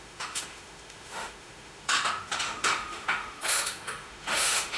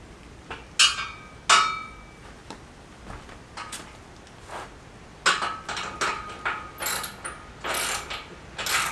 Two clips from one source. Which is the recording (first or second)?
second